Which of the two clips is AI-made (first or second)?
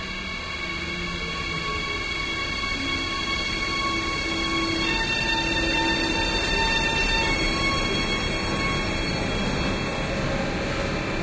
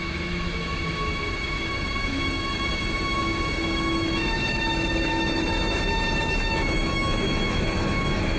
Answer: second